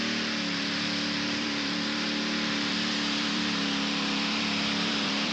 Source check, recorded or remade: remade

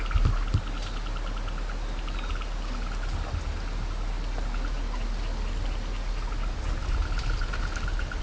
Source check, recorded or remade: recorded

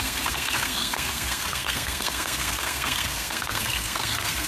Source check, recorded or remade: remade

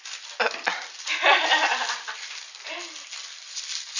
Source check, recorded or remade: recorded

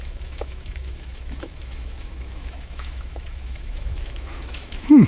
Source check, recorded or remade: remade